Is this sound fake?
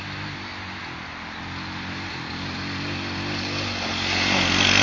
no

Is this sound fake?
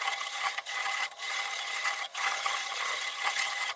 yes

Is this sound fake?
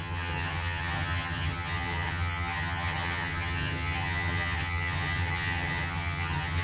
yes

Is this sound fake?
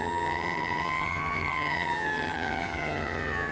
yes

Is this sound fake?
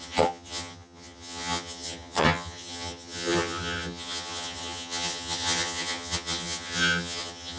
yes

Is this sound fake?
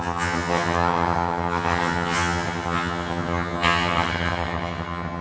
yes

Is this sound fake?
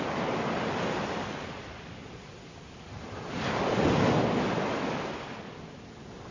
no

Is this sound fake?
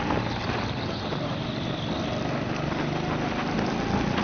no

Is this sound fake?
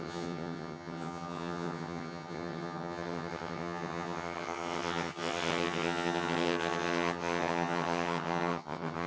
yes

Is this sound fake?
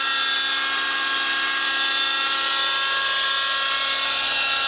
no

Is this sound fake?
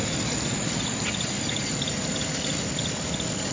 no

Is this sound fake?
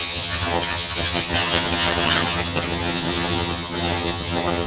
yes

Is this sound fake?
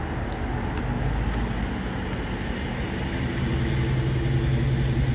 no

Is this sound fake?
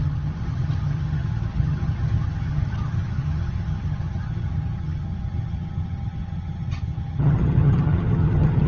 yes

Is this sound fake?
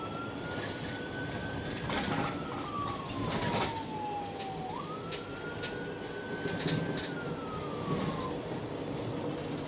no